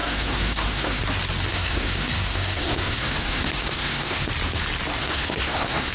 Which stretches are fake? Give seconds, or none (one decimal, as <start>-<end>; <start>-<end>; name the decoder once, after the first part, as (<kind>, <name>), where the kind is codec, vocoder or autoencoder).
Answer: 0.0-1.0 (codec, SNAC); 1.5-4.3; 5.0-5.9